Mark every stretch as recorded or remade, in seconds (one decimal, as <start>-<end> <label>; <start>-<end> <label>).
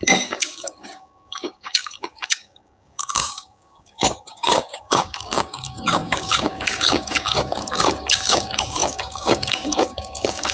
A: 0.0-10.5 remade